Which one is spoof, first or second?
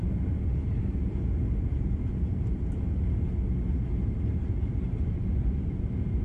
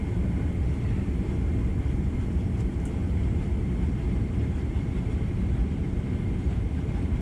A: second